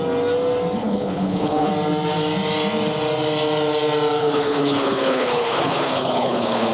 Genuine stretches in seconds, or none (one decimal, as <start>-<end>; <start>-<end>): 0.0-0.8; 1.7-4.2